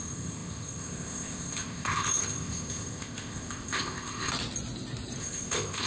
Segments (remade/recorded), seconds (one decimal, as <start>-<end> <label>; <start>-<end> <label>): 0.0-4.3 remade; 4.3-5.2 recorded; 5.2-5.9 remade

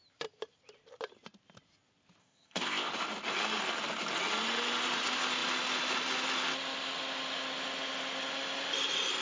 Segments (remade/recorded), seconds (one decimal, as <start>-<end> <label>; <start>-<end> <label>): 0.0-2.2 recorded; 2.2-2.9 remade; 2.9-9.2 recorded